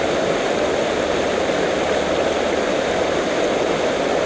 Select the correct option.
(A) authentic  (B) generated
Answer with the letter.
A